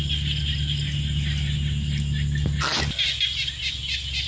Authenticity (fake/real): real